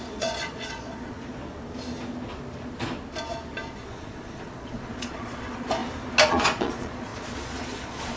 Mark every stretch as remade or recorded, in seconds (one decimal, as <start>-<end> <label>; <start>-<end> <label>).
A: 0.0-1.4 remade; 1.4-3.7 recorded; 3.7-5.8 remade; 5.8-6.3 recorded; 6.3-8.2 remade